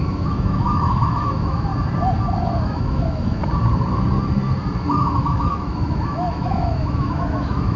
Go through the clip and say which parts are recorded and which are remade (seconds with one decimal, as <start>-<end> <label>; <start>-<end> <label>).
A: 0.0-1.7 remade; 1.7-2.6 recorded; 2.6-3.4 remade; 3.4-5.2 recorded; 5.2-7.8 remade